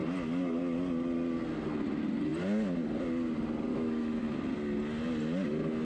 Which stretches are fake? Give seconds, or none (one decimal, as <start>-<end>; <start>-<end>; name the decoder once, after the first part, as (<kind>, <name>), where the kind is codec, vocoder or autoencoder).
3.7-4.2 (autoencoder, DAC-VAE)